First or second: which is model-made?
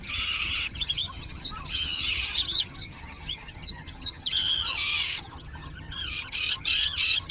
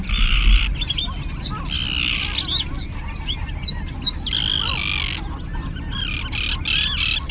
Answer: first